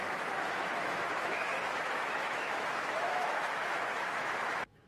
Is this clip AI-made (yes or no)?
yes